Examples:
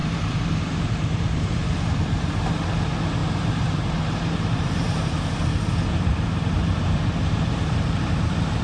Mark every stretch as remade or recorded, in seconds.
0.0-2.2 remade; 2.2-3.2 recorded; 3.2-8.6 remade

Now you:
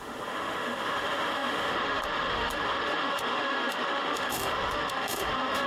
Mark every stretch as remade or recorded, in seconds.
0.0-5.7 remade

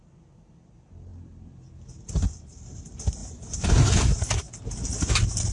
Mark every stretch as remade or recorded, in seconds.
0.0-3.2 recorded; 3.2-4.5 remade; 4.5-5.5 recorded

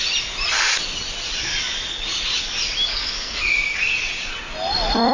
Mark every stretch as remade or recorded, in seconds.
0.0-2.9 recorded; 2.9-3.5 remade; 3.5-5.1 recorded

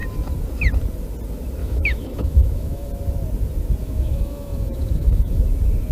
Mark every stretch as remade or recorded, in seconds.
0.0-1.6 recorded; 1.6-2.9 remade; 2.9-3.8 recorded; 3.8-5.4 remade; 5.4-5.9 recorded

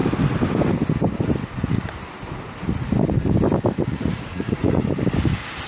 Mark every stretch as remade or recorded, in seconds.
0.0-3.9 recorded; 3.9-4.8 remade; 4.8-5.7 recorded